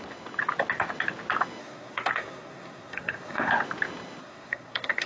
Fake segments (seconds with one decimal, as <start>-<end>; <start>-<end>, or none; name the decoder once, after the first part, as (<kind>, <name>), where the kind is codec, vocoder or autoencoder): 1.6-3.5 (codec, SNAC); 4.2-5.1